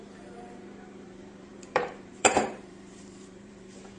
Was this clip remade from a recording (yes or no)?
yes